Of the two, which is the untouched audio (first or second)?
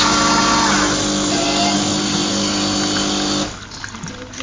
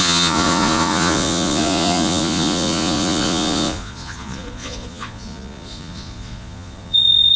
first